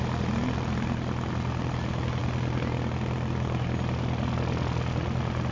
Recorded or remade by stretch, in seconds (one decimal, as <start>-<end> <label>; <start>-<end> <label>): 0.0-5.5 recorded